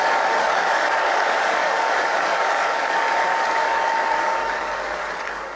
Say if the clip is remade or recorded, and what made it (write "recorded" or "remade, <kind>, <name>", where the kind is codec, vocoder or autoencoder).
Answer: remade, codec, DAC